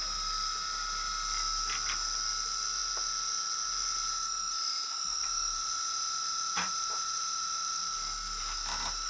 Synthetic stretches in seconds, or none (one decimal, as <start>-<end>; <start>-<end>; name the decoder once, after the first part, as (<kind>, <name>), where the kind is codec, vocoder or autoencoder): 0.6-1.1 (vocoder, BigVGAN v2); 5.1-5.7